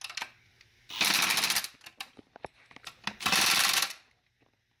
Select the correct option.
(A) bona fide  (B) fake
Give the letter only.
A